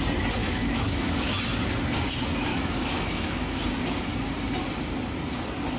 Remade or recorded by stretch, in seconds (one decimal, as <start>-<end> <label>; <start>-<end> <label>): 0.0-0.4 recorded; 0.4-1.4 remade; 1.4-2.5 recorded; 2.5-3.6 remade; 3.6-5.8 recorded